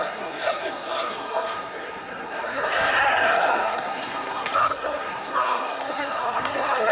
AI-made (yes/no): yes